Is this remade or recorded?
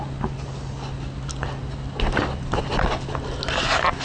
recorded